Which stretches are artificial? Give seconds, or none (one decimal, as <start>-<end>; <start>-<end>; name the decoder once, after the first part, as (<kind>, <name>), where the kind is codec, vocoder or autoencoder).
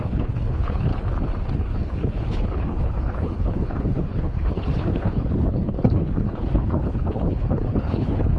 0.0-0.9 (codec, HILCodec); 1.5-8.4